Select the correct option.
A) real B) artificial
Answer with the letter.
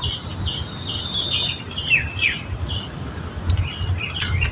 A